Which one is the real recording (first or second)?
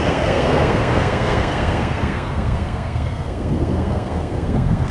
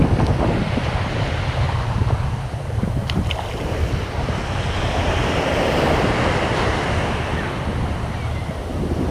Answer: second